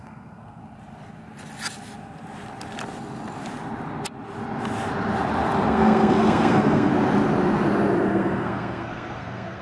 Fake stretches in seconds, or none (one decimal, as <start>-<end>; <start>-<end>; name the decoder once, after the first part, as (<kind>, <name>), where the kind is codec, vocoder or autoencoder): 0.0-0.6 (codec, SNAC); 5.7-6.9; 8.1-9.6

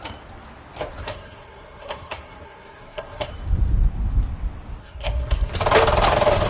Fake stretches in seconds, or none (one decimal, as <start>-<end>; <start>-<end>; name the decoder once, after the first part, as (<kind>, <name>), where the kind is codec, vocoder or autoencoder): 1.0-3.3 (codec, SNAC); 4.8-5.5

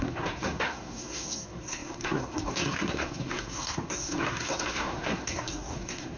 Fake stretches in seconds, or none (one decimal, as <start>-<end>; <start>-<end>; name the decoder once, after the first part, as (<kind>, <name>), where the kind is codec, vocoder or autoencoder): 0.0-6.2 (codec, SNAC)

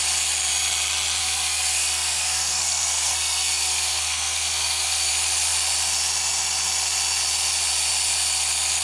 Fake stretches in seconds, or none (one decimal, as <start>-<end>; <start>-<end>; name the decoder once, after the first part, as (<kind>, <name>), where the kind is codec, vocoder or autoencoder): 1.2-5.1 (codec, SNAC)

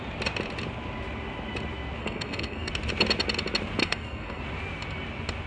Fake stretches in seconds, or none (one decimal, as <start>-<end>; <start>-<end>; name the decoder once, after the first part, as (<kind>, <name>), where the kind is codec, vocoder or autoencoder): 2.0-2.7 (codec, SNAC); 3.8-4.4

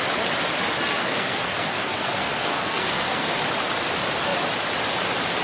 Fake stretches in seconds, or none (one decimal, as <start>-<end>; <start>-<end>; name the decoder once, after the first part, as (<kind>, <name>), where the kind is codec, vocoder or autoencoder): 1.0-3.3 (codec, SNAC)

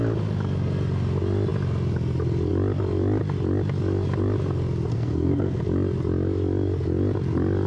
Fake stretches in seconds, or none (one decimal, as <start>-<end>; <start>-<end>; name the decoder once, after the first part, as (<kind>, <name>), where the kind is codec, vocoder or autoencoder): 4.9-5.6 (codec, SNAC)

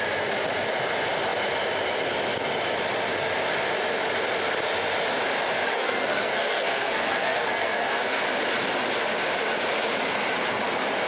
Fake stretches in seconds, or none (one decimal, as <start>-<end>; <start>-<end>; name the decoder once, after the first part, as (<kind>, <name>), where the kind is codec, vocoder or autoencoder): 5.7-8.2 (codec, SNAC)